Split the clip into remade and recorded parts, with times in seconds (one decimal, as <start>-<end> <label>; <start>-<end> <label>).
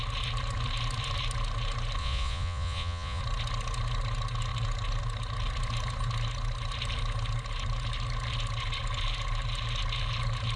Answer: 0.0-2.0 recorded; 2.0-3.2 remade; 3.2-10.6 recorded